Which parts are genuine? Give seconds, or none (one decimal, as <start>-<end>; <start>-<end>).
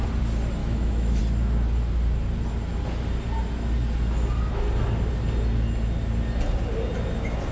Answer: 0.0-0.6; 1.2-7.5